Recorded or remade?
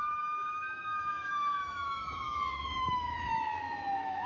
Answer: remade